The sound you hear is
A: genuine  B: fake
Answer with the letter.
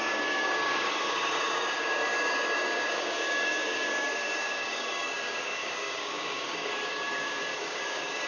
B